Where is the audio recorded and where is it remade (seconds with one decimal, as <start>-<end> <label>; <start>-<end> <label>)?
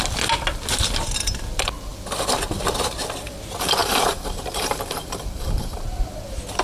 0.0-3.8 recorded; 3.8-5.8 remade; 5.8-6.6 recorded